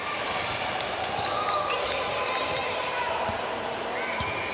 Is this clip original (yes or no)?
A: yes